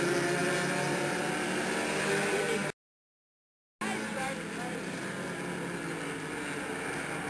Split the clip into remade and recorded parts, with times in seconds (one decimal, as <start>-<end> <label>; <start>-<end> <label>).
0.0-7.3 recorded